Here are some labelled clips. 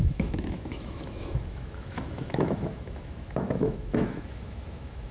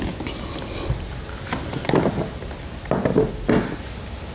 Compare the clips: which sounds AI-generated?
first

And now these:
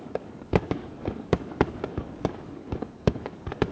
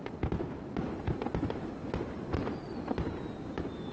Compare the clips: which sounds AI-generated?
first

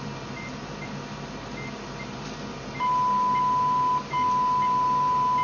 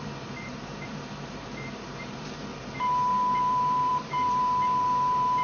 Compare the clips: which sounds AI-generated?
second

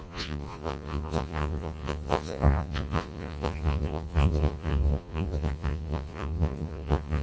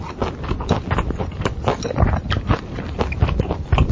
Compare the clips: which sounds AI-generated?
first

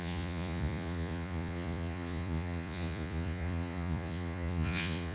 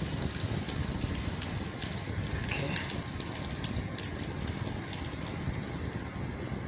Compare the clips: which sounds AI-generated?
first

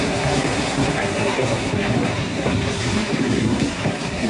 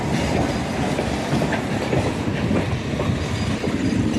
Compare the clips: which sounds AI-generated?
first